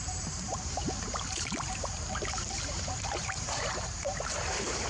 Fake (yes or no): yes